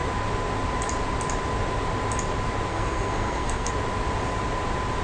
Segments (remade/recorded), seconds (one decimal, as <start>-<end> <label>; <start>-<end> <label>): 0.0-2.7 recorded; 2.7-3.7 remade; 3.7-5.0 recorded